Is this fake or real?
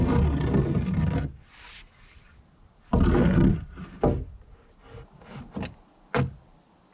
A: real